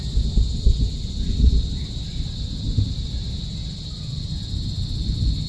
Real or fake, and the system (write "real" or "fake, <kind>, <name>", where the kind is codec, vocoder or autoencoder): real